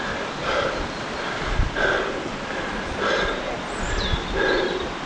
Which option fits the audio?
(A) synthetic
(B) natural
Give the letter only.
B